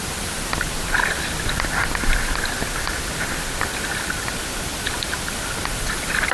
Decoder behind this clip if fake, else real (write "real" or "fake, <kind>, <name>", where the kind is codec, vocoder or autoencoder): fake, vocoder, BigVGAN v2